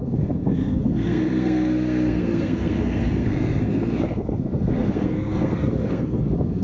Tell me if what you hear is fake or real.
fake